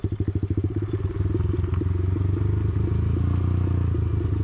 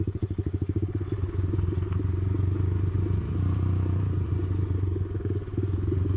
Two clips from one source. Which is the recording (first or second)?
first